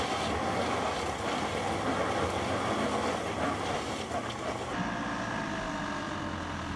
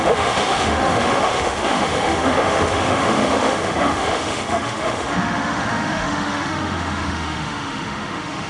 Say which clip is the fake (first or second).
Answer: second